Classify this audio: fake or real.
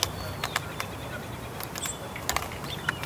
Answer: real